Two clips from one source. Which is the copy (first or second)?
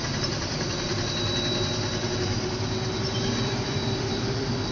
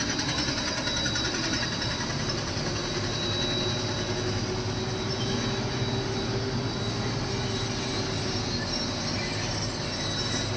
first